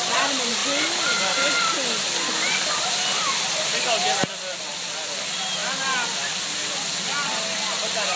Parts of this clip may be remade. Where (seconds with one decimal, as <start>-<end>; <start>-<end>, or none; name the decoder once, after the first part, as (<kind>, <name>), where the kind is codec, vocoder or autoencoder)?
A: none